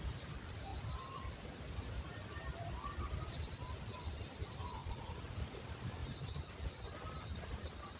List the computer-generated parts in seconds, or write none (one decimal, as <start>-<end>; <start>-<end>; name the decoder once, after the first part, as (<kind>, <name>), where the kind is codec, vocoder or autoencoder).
4.8-5.6 (vocoder, Vocos)